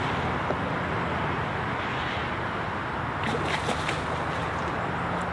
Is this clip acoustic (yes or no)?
yes